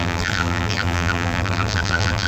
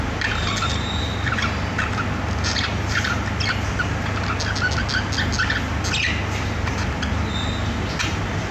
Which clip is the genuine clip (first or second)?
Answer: second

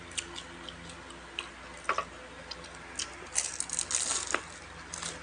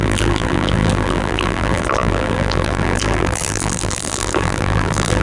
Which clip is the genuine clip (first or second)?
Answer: first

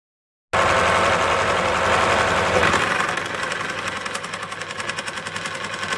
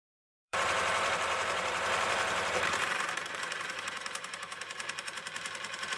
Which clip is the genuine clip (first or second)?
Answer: first